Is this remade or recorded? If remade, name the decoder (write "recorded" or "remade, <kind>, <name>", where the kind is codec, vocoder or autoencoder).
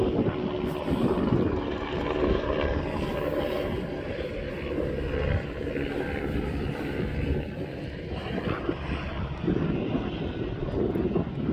recorded